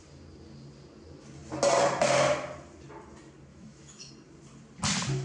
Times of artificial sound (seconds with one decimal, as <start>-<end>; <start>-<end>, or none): 3.5-4.1